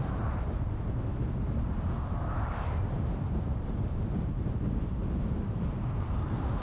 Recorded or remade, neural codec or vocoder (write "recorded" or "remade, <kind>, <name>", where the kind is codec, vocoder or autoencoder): remade, vocoder, BigVGAN v2